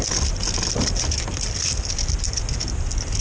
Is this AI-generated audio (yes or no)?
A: no